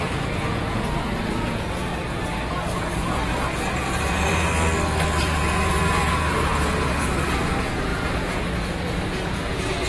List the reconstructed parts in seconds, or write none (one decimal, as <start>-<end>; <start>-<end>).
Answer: 0.0-1.9; 2.6-4.5; 5.2-9.9